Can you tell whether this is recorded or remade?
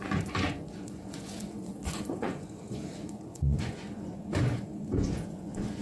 remade